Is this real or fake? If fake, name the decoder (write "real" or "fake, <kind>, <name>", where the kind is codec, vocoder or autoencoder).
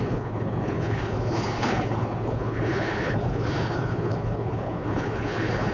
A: fake, codec, HILCodec